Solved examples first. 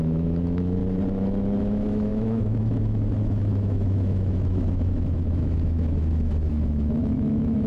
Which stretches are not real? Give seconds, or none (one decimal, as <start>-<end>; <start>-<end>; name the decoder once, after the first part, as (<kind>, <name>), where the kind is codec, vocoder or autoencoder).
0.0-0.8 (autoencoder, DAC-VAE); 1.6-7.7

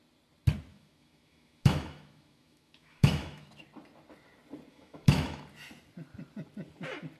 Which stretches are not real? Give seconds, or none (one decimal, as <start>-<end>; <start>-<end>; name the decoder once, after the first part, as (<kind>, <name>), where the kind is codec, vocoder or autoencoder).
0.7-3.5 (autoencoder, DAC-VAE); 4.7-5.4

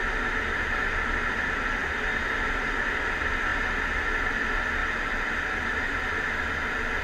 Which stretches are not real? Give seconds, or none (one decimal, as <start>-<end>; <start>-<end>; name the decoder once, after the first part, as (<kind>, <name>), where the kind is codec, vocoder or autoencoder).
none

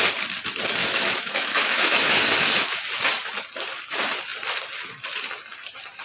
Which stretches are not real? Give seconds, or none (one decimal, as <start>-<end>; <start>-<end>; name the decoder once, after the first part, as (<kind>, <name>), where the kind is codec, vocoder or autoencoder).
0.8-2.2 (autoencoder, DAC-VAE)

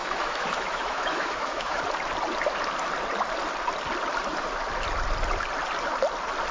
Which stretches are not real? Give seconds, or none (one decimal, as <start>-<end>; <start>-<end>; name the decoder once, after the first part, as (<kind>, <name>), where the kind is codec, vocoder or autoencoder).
0.0-1.8 (autoencoder, DAC-VAE)